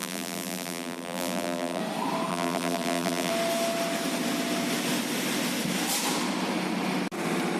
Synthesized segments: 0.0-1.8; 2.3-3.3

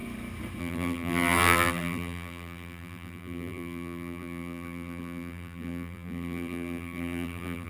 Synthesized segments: 0.6-7.7